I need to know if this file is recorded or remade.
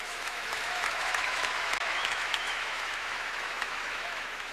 remade